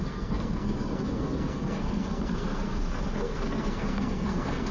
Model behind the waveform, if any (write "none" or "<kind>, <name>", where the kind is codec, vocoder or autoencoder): codec, SNAC